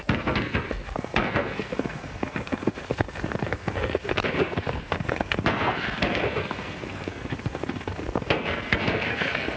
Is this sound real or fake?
fake